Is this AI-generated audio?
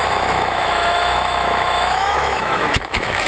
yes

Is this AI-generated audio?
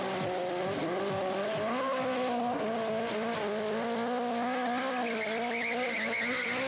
no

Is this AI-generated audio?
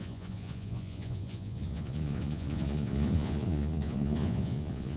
yes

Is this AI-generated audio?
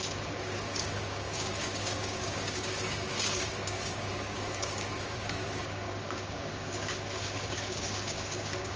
yes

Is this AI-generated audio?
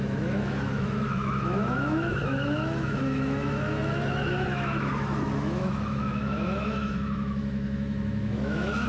yes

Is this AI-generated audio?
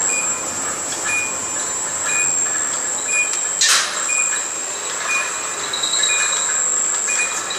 no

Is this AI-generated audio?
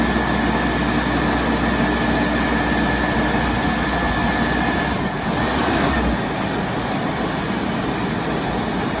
no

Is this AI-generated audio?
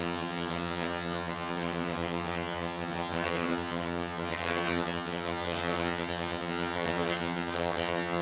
yes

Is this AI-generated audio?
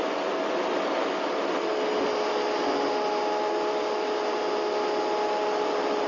no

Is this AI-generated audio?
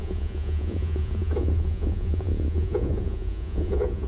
yes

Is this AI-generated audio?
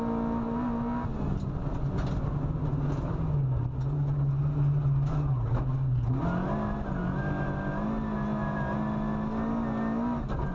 no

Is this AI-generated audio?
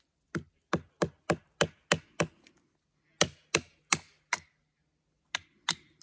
no